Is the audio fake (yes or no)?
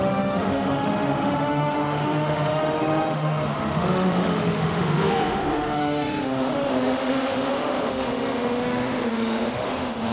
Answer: yes